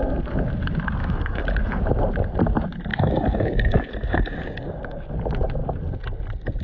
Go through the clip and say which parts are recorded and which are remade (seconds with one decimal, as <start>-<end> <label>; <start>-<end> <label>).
0.0-1.0 recorded; 1.0-1.7 remade; 1.7-2.9 recorded; 2.9-5.1 remade; 5.1-6.6 recorded